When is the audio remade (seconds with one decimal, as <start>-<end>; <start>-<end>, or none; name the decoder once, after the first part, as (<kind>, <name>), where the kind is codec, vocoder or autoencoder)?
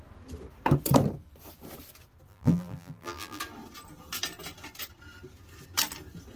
2.3-3.4 (vocoder, BigVGAN v2)